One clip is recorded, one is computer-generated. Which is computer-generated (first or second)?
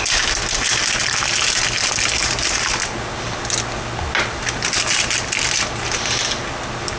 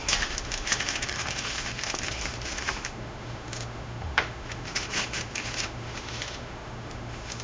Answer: second